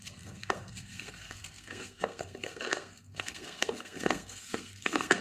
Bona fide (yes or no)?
no